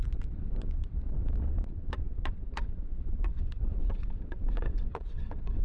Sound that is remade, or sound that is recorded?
remade